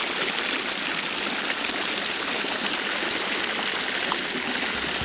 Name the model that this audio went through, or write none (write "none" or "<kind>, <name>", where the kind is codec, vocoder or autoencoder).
none